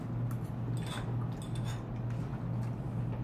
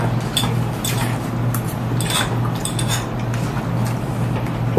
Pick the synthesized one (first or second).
second